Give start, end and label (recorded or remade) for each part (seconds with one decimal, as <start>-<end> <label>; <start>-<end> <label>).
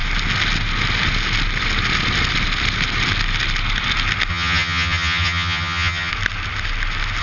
0.0-4.3 recorded; 4.3-6.1 remade; 6.1-7.2 recorded